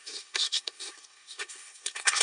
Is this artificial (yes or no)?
yes